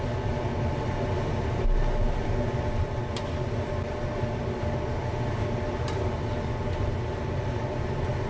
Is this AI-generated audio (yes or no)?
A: no